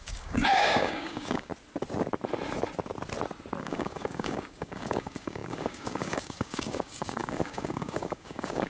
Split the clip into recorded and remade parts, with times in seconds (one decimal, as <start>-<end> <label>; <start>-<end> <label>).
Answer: 0.0-1.5 remade; 1.5-3.6 recorded; 3.6-8.7 remade